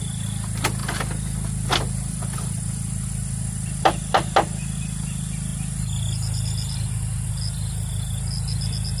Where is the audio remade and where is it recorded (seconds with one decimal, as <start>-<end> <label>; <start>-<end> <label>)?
0.0-9.0 recorded

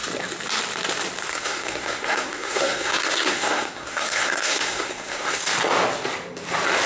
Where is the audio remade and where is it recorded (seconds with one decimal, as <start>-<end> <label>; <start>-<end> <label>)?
0.0-1.3 recorded; 1.3-5.4 remade; 5.4-6.9 recorded

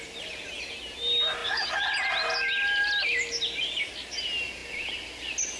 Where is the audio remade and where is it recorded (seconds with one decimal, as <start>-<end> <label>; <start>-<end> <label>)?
0.0-5.6 recorded